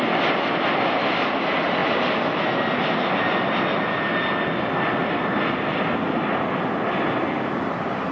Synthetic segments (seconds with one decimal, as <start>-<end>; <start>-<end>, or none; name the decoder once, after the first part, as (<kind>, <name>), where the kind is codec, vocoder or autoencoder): none